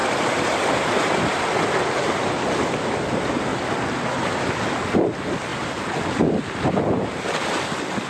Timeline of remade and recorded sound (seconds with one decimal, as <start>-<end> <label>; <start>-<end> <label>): 0.0-1.3 remade; 1.3-3.5 recorded; 3.5-4.1 remade; 4.1-7.1 recorded; 7.1-8.1 remade